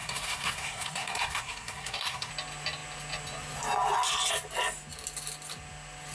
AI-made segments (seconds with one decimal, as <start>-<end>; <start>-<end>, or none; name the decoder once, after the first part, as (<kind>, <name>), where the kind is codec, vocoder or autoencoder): 0.0-2.3 (codec, SNAC)

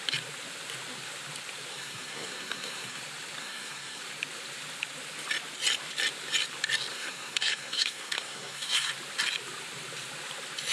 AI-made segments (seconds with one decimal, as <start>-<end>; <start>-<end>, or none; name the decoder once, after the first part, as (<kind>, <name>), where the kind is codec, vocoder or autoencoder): 1.7-3.0 (codec, SNAC); 3.4-4.0; 6.9-8.9